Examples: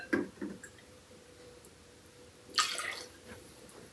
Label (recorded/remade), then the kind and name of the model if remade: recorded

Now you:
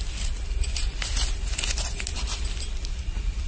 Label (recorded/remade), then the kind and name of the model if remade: recorded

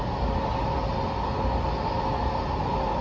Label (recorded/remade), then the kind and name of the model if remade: recorded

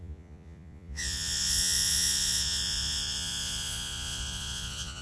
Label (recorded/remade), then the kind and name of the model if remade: remade, vocoder, Vocos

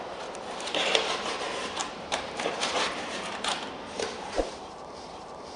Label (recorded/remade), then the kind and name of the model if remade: remade, vocoder, BigVGAN v2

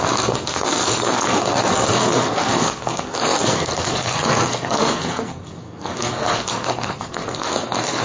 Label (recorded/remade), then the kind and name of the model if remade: remade, codec, SNAC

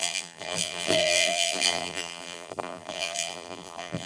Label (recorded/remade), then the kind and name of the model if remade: remade, vocoder, BigVGAN v2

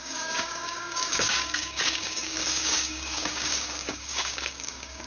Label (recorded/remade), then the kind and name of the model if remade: remade, codec, DAC